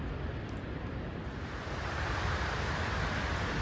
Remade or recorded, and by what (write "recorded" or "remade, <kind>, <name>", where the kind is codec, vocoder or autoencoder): recorded